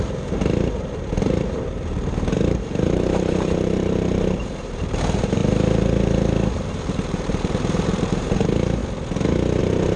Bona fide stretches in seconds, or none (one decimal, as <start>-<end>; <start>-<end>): 5.4-6.7; 8.8-9.6